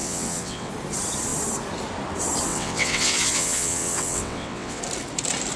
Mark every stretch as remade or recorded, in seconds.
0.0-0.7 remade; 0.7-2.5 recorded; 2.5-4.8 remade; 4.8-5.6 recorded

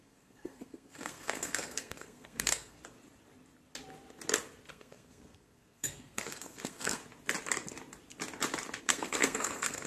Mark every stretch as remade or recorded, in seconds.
0.0-2.8 remade; 2.8-4.7 recorded; 4.7-7.0 remade; 7.0-8.8 recorded; 8.8-9.9 remade

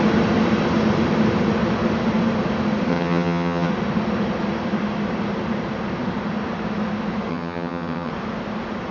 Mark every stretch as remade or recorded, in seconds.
0.0-2.9 recorded; 2.9-3.7 remade; 3.7-7.3 recorded; 7.3-8.1 remade; 8.1-8.9 recorded